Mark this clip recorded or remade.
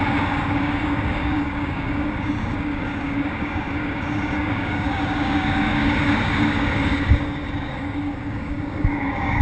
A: remade